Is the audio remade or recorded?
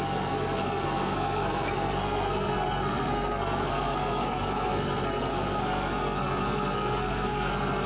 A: remade